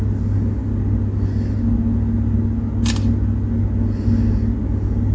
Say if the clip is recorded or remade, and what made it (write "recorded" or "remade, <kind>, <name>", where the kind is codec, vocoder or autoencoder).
recorded